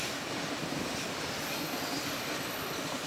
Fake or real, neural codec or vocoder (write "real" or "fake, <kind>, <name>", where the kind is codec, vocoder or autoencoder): real